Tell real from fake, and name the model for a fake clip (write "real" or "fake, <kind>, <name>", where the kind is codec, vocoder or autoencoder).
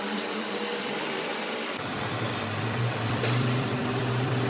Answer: fake, vocoder, BigVGAN v2